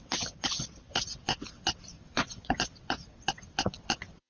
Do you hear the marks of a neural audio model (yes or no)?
yes